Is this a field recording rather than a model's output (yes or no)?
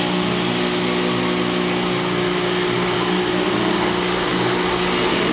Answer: yes